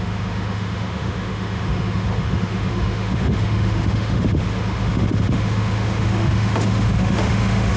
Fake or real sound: fake